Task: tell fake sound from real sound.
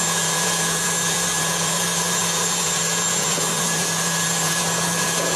fake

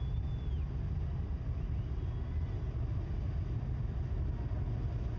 real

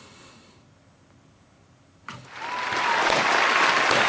real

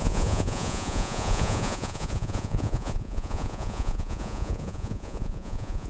fake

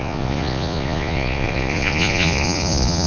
fake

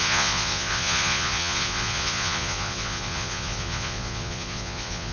fake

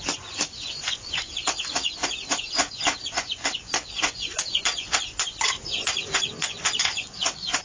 fake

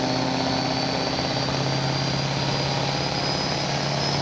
real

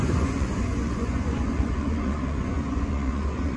fake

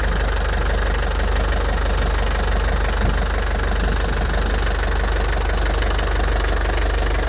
real